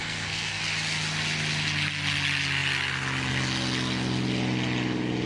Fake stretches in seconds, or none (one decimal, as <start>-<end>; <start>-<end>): 0.0-0.6